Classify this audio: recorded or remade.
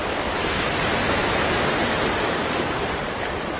recorded